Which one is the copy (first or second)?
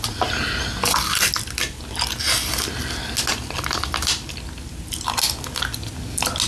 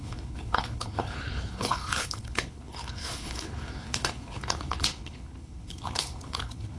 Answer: second